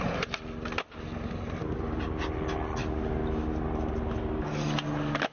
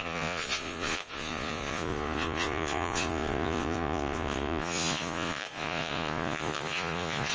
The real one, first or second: first